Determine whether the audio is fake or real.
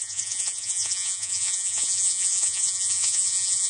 fake